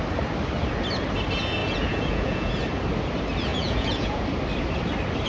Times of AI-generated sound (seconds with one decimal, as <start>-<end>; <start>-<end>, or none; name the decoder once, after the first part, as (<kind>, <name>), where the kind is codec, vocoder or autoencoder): 1.6-2.5 (vocoder, Vocos); 3.5-4.2